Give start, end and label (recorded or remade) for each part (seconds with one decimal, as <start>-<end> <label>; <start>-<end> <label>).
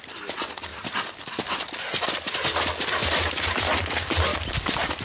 0.0-0.7 recorded; 0.7-2.4 remade; 2.4-3.0 recorded; 3.0-3.9 remade; 3.9-4.3 recorded; 4.3-5.0 remade